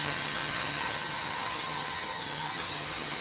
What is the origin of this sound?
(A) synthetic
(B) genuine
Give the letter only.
A